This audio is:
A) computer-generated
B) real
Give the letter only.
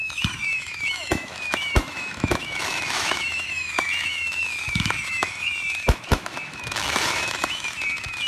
A